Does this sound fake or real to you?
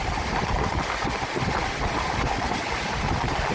real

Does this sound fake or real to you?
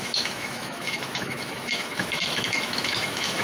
fake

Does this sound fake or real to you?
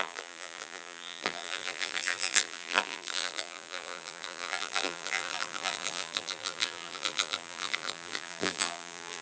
fake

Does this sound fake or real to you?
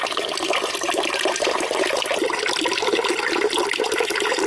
real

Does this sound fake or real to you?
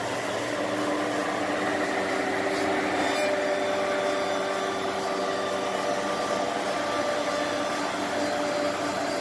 real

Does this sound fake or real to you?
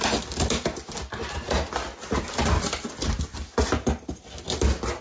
real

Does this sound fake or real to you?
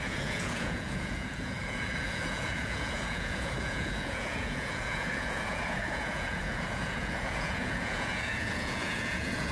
fake